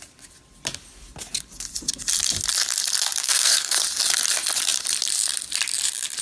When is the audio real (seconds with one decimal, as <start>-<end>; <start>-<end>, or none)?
0.0-3.2; 3.8-6.2